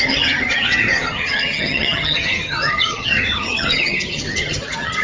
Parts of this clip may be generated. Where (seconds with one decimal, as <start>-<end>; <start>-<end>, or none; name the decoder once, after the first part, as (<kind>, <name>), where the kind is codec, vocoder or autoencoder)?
0.0-5.0 (vocoder, HiFi-GAN)